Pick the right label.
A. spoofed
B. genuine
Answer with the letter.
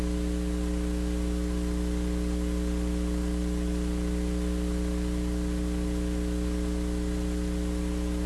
B